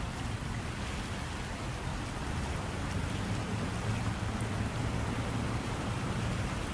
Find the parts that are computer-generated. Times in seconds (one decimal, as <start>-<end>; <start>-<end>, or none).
none